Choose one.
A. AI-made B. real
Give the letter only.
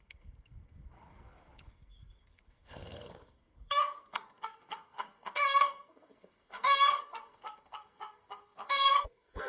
A